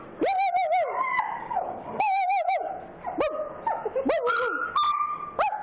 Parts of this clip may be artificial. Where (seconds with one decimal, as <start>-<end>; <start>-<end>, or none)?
1.4-2.7